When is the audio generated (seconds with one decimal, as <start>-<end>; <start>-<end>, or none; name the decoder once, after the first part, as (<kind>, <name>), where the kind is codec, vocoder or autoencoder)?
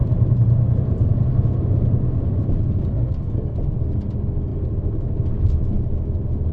0.0-1.3 (vocoder, BigVGAN v2); 4.5-5.5